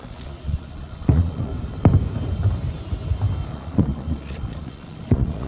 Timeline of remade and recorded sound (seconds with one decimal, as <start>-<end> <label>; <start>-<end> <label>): 0.0-1.5 remade; 1.5-3.5 recorded; 3.5-5.5 remade